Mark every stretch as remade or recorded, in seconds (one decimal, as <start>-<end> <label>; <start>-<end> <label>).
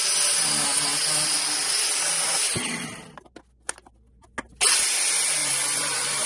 0.0-5.4 recorded; 5.4-6.3 remade